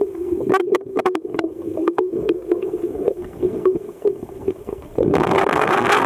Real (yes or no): no